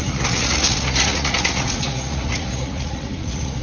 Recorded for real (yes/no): no